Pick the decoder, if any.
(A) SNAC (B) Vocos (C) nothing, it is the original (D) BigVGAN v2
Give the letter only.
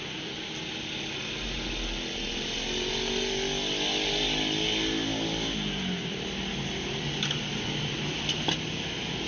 C